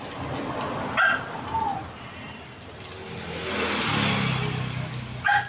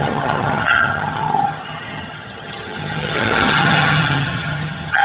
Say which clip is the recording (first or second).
first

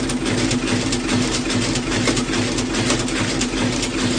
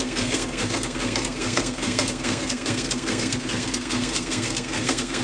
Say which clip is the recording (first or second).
first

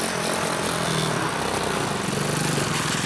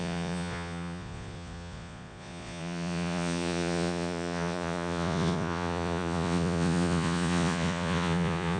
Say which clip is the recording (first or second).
first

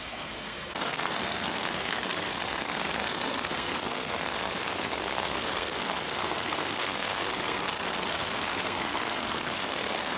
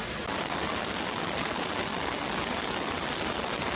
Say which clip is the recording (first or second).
second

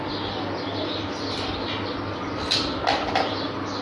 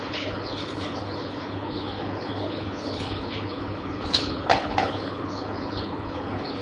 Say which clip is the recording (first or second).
first